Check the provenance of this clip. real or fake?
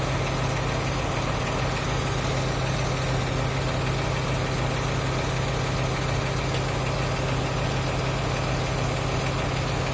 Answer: real